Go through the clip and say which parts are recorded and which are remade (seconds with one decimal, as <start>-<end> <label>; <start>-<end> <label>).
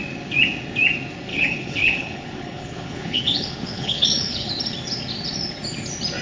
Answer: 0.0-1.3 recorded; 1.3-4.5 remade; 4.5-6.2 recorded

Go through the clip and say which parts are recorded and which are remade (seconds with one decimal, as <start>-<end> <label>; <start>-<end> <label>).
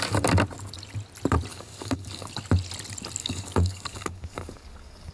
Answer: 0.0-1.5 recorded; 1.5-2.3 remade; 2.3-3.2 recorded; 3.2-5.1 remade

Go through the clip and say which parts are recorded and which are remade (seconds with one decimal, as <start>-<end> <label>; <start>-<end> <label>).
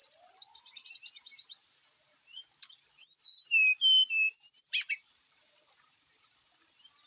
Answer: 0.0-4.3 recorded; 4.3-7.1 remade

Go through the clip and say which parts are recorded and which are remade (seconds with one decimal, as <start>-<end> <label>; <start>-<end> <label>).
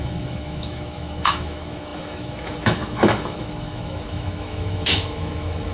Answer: 0.0-5.7 remade